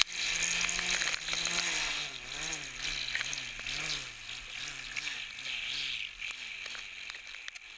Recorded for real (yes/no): yes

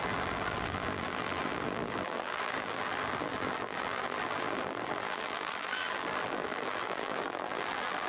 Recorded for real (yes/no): no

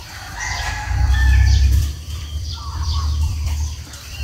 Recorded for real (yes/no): no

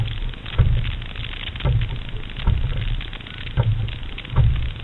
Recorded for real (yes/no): yes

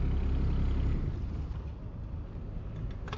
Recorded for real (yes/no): yes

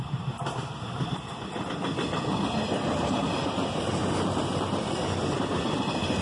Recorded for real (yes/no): yes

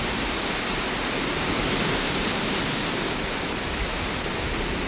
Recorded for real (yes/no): yes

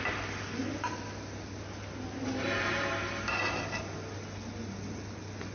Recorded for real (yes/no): yes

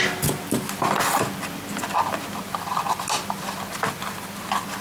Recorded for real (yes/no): yes